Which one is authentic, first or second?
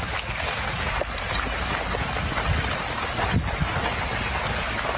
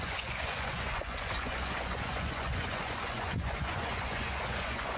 first